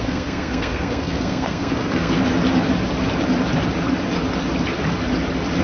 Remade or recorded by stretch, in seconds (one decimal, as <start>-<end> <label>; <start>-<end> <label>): 0.0-2.2 remade; 2.2-5.6 recorded